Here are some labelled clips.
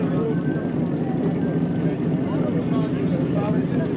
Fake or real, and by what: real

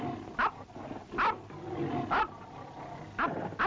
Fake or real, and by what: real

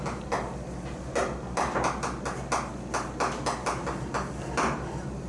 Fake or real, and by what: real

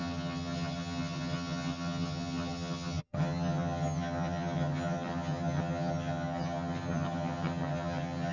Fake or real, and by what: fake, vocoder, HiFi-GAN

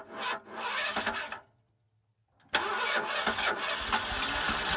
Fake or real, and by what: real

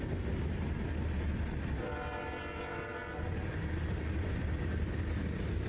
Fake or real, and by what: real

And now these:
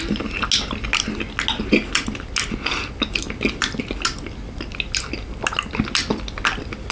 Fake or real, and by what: real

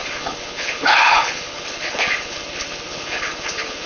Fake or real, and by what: fake, codec, HILCodec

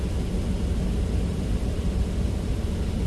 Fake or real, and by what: real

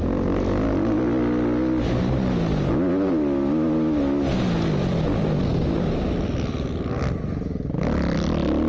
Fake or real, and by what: real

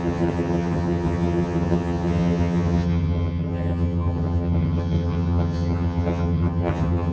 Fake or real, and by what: fake, vocoder, HiFi-GAN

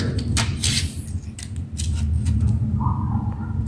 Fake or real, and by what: real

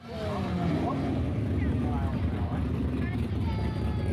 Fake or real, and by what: real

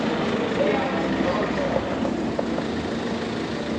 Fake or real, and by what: real